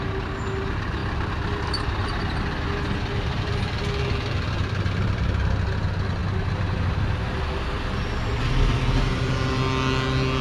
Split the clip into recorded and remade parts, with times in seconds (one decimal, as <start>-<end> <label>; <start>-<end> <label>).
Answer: 0.0-10.4 recorded